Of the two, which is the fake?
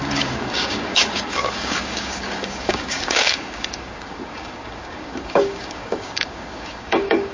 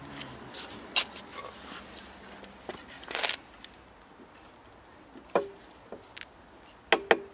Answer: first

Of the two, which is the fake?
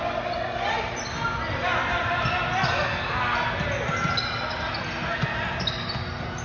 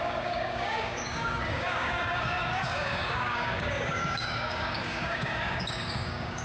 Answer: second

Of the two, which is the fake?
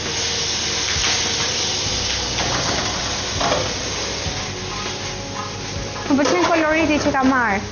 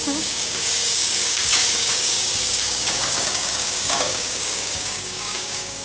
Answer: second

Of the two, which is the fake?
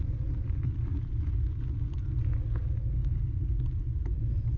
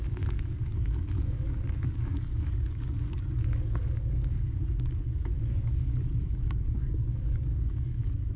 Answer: second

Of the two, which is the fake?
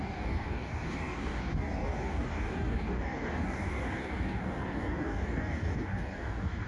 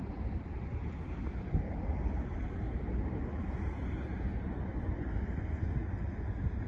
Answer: first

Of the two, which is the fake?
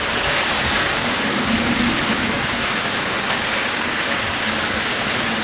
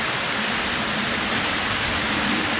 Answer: first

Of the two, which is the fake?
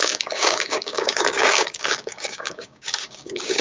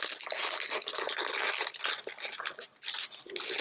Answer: first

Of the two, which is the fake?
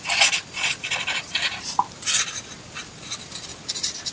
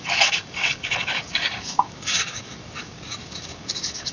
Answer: second